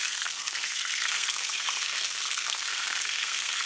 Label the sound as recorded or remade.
remade